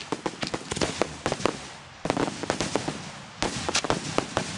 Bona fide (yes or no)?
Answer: yes